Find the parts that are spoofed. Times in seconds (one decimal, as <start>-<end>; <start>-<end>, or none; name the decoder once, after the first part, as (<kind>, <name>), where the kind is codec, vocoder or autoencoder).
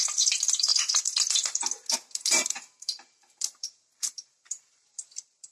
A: 0.0-5.5 (vocoder, BigVGAN v2)